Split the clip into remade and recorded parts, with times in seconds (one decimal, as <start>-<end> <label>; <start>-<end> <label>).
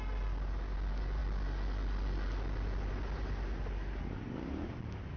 0.0-5.2 recorded